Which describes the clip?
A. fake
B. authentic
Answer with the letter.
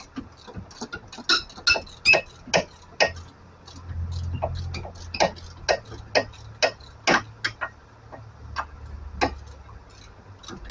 B